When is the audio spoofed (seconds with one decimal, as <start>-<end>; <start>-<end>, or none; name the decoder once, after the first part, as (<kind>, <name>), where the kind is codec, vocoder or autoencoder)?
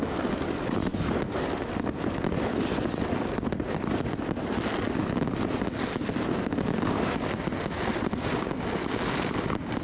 none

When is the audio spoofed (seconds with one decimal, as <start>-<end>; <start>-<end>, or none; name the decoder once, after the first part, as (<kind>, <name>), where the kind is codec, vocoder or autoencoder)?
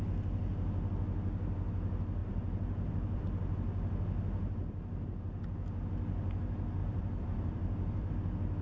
2.2-3.2 (vocoder, BigVGAN v2); 6.8-8.1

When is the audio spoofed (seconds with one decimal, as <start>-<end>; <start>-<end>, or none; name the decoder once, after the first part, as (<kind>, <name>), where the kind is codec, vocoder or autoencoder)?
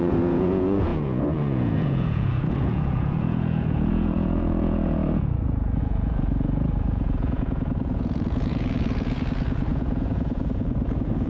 0.0-11.3 (vocoder, Vocos)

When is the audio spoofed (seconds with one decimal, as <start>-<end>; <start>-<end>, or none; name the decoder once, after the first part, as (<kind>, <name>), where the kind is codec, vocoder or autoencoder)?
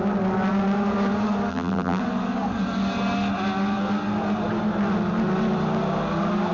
1.5-2.0 (vocoder, BigVGAN v2)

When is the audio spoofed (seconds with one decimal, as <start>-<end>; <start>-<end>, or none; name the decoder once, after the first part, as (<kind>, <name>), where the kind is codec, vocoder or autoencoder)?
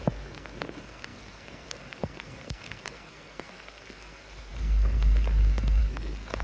0.0-6.4 (codec, SNAC)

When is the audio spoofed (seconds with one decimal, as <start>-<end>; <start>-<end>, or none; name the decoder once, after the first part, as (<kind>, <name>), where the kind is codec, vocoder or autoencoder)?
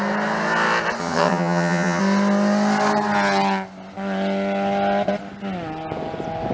1.0-2.0 (vocoder, HiFi-GAN)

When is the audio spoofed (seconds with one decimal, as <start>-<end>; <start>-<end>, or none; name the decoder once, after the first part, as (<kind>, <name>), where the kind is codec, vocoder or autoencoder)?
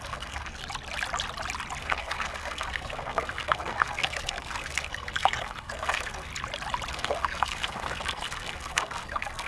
0.0-0.6 (codec, SNAC); 1.8-6.3; 6.9-9.5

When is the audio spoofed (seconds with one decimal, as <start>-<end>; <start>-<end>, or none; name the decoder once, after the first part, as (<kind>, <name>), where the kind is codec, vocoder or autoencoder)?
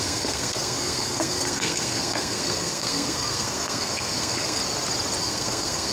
0.0-4.6 (codec, SNAC); 5.2-5.9